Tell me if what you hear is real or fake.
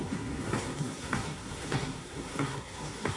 fake